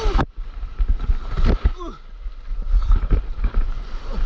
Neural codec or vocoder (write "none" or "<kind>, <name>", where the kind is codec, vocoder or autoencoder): none